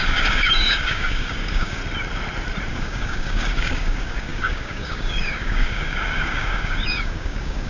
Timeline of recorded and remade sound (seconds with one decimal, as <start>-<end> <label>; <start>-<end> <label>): 0.0-1.8 remade; 1.8-2.7 recorded; 2.7-7.7 remade